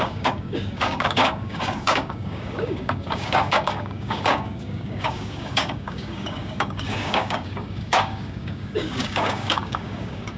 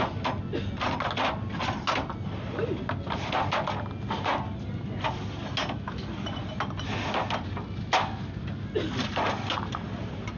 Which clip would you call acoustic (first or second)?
second